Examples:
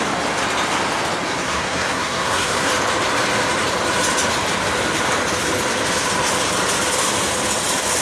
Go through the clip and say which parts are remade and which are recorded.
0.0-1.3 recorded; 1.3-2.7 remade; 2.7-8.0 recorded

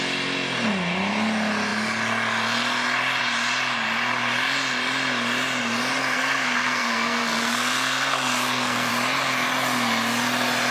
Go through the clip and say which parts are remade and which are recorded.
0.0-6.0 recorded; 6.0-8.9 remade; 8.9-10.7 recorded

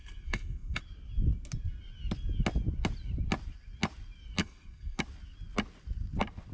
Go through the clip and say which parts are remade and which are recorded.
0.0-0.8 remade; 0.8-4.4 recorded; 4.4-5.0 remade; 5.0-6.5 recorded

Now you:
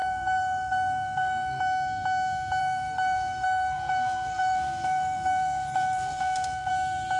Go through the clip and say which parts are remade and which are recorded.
0.0-1.6 remade; 1.6-2.6 recorded; 2.6-6.7 remade; 6.7-7.2 recorded

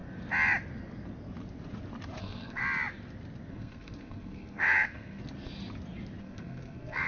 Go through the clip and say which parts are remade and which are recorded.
0.0-2.2 recorded; 2.2-2.6 remade; 2.6-3.5 recorded; 3.5-5.2 remade; 5.2-6.2 recorded; 6.2-7.1 remade

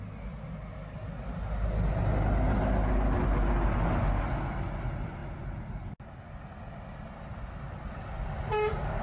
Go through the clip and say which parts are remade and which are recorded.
0.0-9.0 recorded